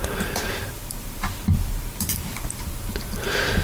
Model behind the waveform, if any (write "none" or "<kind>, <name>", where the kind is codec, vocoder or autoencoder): vocoder, BigVGAN v2